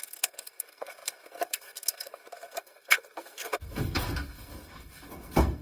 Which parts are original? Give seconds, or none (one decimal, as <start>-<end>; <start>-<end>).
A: none